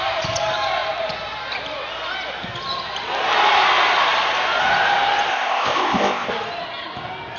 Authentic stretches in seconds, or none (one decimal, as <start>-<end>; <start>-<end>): 0.0-5.3; 6.3-7.4

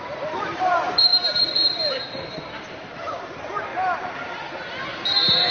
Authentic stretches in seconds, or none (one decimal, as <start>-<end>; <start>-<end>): 3.7-5.5

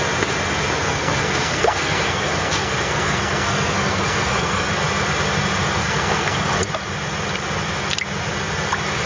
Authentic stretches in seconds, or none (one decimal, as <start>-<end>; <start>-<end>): 0.0-0.8; 4.7-5.8; 6.6-9.1

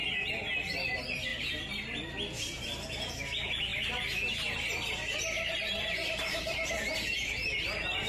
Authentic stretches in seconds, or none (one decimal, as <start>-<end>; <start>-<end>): 0.0-3.7

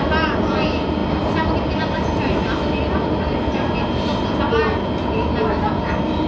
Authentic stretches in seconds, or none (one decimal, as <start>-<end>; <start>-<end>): 0.0-6.3

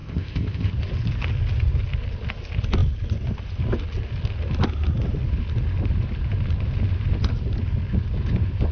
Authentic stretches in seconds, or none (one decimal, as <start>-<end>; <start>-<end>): 0.7-8.7

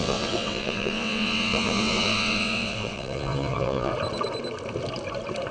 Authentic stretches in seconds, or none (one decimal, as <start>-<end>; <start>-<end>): 3.9-5.5